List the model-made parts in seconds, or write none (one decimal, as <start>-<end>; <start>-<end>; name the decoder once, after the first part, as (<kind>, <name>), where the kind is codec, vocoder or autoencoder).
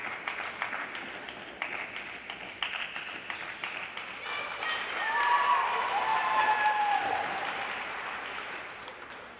4.8-9.4 (vocoder, BigVGAN v2)